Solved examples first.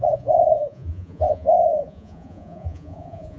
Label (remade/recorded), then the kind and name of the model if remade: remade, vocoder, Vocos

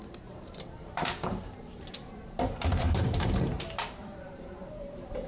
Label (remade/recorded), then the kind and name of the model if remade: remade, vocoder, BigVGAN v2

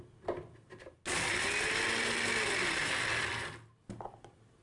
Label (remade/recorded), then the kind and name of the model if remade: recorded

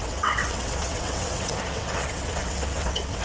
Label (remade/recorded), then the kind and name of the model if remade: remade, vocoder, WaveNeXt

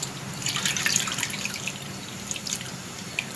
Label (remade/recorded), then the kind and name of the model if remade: remade, vocoder, BigVGAN v2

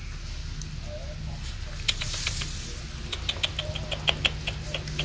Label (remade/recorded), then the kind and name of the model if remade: recorded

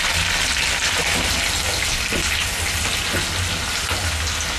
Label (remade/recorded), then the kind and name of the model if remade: recorded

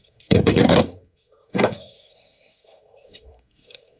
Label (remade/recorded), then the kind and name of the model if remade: remade, codec, SNAC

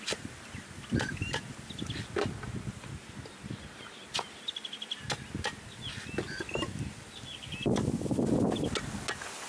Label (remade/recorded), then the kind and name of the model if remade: recorded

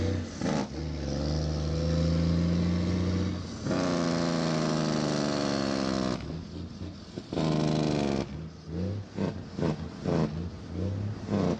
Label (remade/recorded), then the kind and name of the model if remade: recorded